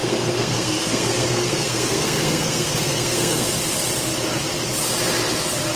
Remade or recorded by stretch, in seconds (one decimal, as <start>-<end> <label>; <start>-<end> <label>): 0.0-3.5 remade; 3.5-5.8 recorded